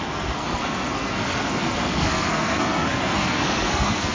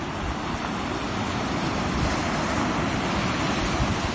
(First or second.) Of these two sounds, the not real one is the first